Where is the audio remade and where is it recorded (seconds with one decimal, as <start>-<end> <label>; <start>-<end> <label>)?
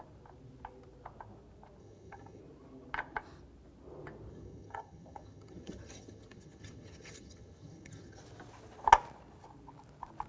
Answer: 0.0-1.8 recorded; 1.8-2.4 remade; 2.4-4.3 recorded; 4.3-8.2 remade; 8.2-10.3 recorded